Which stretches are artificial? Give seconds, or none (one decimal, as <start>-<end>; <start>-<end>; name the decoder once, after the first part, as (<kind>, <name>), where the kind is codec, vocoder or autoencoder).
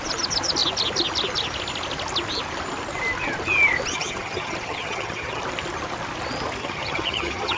3.9-5.4 (vocoder, HiFi-GAN); 6.6-7.6